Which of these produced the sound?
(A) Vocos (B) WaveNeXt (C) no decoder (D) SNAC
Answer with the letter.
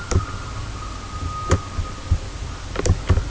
C